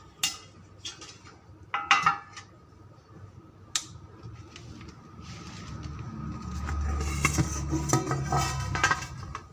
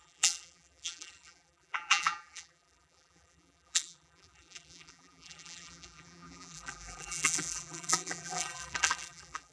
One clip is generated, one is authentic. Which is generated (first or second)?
second